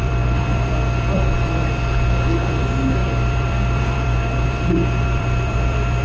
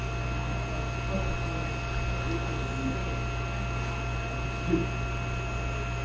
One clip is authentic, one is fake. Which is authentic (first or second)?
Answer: second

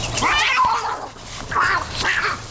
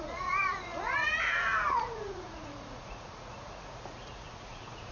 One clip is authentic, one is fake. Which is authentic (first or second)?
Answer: first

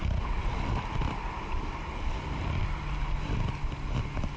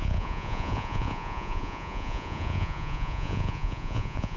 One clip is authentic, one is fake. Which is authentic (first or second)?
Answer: first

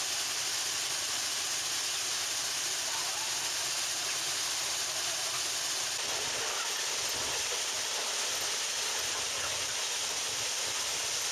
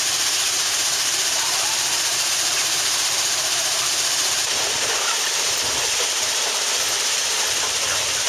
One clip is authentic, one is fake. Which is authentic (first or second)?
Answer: first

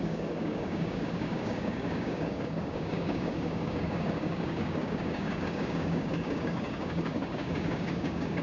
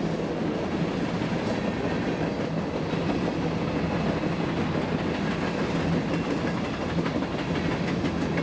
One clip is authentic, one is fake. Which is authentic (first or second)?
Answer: second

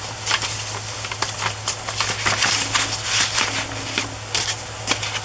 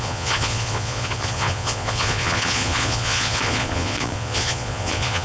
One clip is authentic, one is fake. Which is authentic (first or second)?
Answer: first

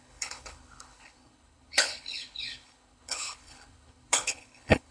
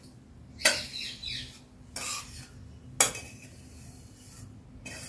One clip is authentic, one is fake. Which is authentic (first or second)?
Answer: second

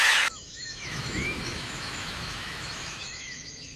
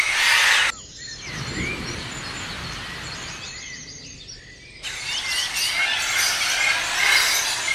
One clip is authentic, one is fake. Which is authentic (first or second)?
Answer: second